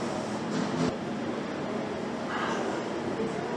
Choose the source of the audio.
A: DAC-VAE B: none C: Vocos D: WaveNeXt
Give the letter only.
B